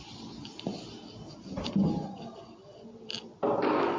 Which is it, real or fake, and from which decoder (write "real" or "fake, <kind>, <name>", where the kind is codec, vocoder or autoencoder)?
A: real